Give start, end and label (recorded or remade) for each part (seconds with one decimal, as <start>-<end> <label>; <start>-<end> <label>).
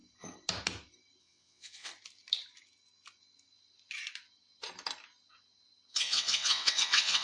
0.0-1.2 recorded; 1.2-1.9 remade; 1.9-5.9 recorded; 5.9-7.2 remade